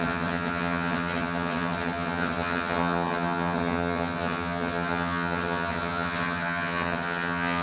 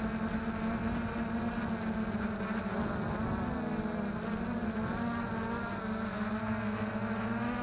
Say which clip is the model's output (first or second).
first